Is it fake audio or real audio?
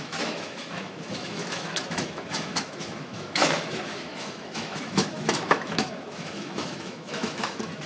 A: fake